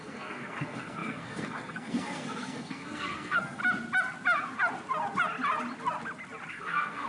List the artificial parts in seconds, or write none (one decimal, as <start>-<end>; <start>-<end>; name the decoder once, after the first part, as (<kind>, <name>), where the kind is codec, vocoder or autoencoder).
0.0-3.6 (codec, SNAC); 6.5-7.1